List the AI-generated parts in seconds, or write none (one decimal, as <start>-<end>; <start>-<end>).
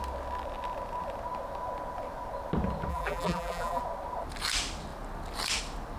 2.9-3.8